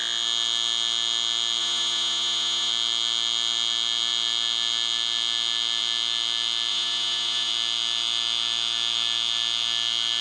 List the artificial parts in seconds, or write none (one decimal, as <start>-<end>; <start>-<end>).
1.6-2.7; 6.7-7.5